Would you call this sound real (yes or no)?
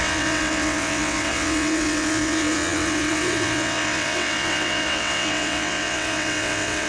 no